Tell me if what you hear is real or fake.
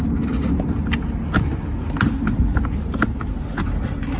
real